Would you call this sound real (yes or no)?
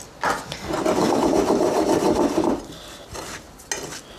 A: yes